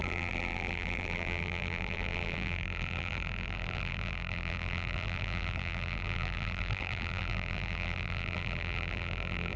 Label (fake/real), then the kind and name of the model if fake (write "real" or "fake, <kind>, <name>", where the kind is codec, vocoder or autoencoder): fake, vocoder, BigVGAN v2